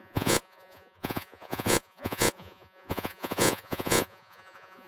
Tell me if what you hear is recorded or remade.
remade